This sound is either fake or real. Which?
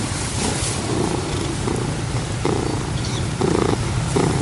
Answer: fake